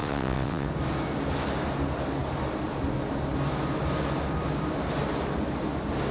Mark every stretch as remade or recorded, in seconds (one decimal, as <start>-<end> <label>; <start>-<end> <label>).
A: 0.0-0.7 remade; 0.7-6.1 recorded